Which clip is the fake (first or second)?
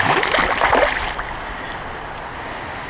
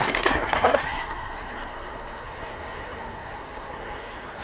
second